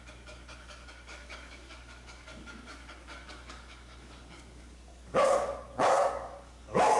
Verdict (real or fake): fake